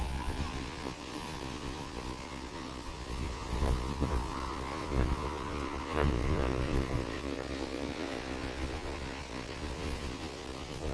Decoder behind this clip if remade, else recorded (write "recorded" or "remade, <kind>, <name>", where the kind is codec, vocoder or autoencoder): remade, vocoder, Vocos